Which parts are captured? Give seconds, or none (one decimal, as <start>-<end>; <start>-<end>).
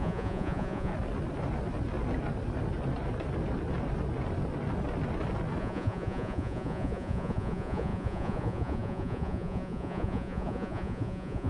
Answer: 0.9-5.6